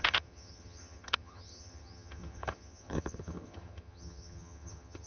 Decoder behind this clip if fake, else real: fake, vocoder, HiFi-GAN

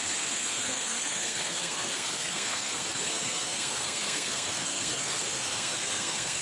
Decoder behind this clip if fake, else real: fake, codec, SNAC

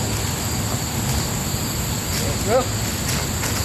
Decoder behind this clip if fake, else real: real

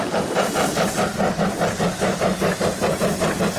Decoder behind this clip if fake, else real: real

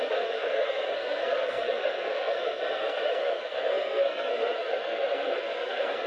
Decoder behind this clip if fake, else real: fake, codec, SNAC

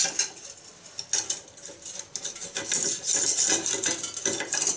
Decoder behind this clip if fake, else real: real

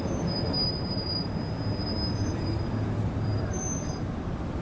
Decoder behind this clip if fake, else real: fake, vocoder, BigVGAN v2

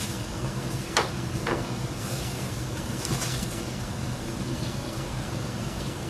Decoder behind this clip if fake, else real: fake, codec, SNAC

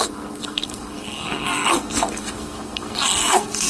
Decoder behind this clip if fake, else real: fake, codec, SNAC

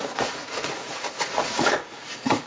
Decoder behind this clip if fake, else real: fake, vocoder, Vocos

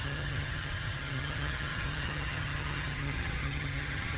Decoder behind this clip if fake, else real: fake, vocoder, HiFi-GAN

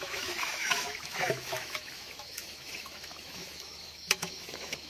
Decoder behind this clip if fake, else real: fake, autoencoder, DAC-VAE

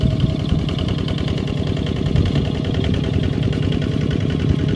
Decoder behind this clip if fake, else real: real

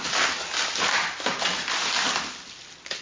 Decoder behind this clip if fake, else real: real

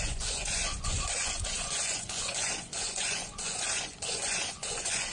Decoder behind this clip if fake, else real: fake, vocoder, Vocos